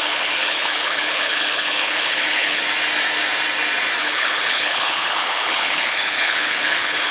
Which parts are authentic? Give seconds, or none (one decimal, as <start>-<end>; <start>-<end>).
2.6-4.0